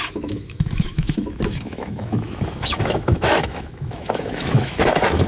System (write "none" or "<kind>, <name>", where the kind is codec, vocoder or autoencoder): autoencoder, DAC-VAE